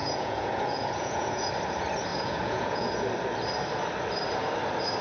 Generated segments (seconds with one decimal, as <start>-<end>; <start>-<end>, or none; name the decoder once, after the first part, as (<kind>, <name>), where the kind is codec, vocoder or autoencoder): 0.0-1.5 (vocoder, Vocos); 2.1-2.9